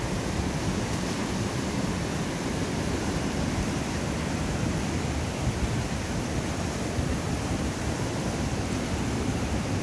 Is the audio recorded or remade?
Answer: remade